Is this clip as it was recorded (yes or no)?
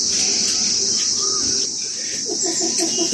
yes